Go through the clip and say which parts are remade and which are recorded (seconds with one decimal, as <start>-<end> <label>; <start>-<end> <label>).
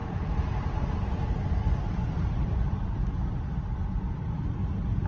0.0-2.9 remade; 2.9-5.1 recorded